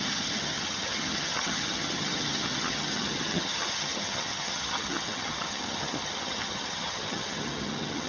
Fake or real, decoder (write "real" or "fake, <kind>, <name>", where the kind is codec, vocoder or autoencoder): fake, vocoder, HiFi-GAN